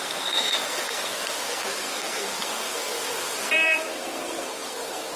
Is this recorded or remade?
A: remade